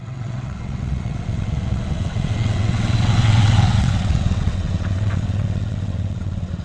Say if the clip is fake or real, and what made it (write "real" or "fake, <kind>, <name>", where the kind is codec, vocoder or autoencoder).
fake, vocoder, WaveNeXt